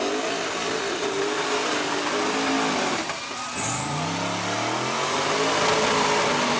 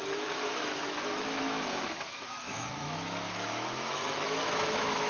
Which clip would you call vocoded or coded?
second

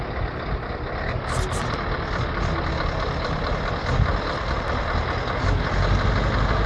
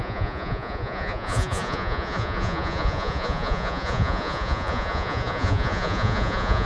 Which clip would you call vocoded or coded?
second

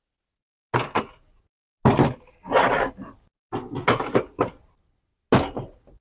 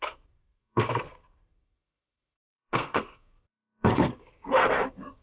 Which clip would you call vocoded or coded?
second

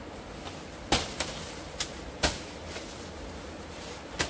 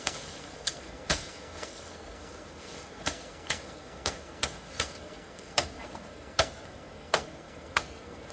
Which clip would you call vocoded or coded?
second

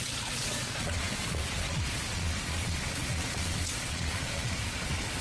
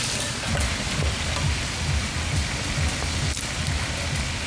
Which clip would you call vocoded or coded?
first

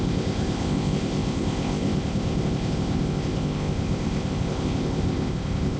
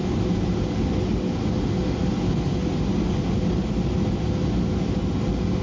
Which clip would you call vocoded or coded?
first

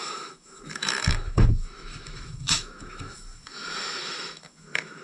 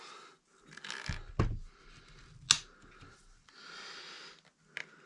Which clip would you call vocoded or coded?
first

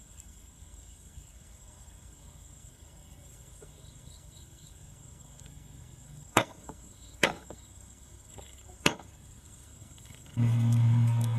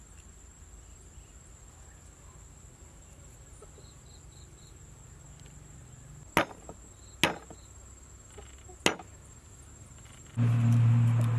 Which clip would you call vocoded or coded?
first